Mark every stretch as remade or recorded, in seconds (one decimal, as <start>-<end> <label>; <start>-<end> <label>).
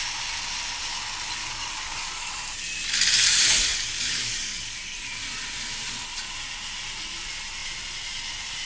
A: 0.0-1.4 recorded; 1.4-2.3 remade; 2.3-3.7 recorded; 3.7-5.2 remade; 5.2-8.7 recorded